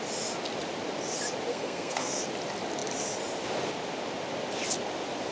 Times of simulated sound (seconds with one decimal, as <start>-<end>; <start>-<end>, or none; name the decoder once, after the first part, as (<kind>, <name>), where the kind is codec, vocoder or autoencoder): 1.5-2.2 (codec, SNAC)